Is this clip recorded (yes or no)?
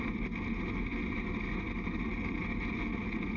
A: yes